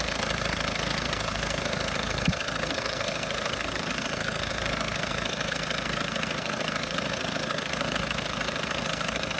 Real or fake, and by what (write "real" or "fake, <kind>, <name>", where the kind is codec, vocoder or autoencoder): fake, codec, SNAC